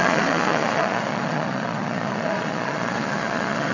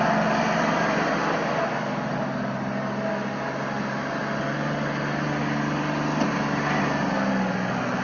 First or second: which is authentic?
second